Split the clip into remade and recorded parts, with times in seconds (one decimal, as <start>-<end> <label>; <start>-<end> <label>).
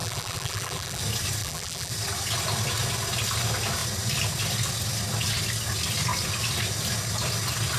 0.0-1.0 remade; 1.0-1.4 recorded; 1.4-1.9 remade; 1.9-7.8 recorded